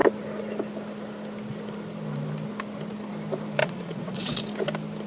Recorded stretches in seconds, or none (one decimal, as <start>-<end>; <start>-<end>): 0.0-3.6; 4.4-5.1